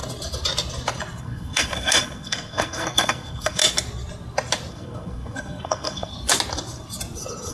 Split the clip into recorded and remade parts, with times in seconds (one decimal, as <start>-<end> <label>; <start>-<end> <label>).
0.0-1.2 recorded; 1.2-3.6 remade; 3.6-4.7 recorded; 4.7-6.1 remade; 6.1-7.5 recorded